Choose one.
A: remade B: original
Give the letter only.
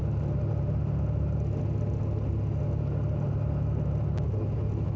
B